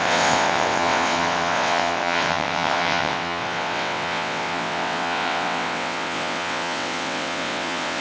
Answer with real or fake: fake